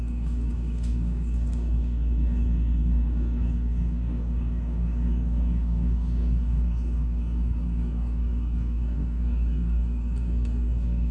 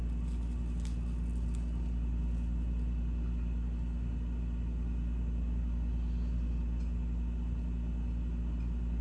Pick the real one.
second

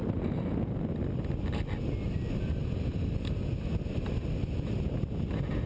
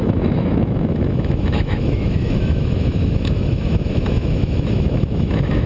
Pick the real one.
first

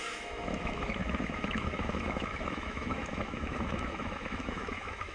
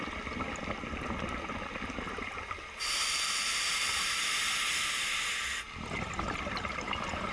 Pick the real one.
second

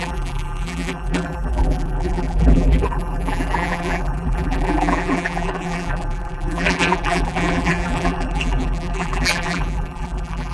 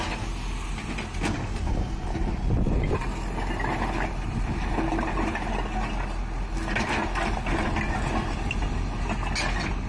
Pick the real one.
second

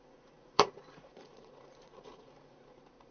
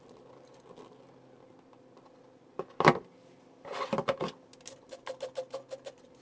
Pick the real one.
second